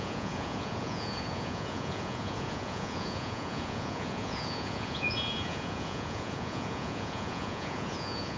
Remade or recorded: remade